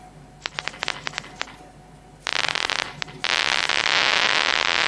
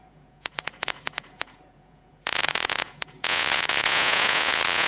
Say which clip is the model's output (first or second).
second